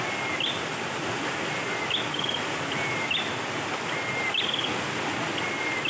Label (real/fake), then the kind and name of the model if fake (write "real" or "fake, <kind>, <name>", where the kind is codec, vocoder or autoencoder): real